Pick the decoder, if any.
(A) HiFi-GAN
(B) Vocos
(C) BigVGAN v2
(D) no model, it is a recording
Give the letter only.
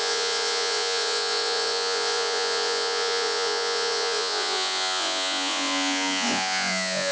B